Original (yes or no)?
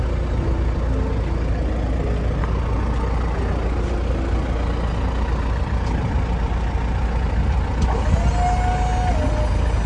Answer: yes